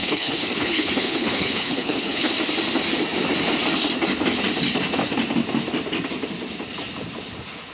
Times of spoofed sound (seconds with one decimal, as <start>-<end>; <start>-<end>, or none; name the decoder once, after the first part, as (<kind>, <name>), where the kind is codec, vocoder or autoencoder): 0.0-2.3 (codec, HILCodec)